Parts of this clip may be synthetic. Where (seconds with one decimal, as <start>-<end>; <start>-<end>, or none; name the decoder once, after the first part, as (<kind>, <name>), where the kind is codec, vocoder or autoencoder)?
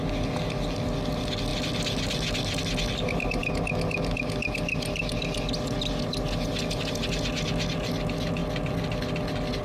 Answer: 1.5-2.6 (vocoder, BigVGAN v2); 8.4-9.0